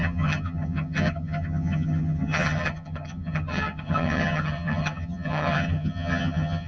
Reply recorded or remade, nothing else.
remade